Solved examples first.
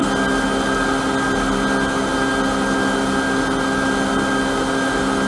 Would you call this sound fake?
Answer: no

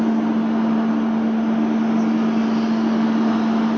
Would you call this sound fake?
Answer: no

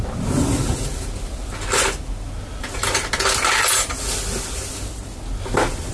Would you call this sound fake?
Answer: no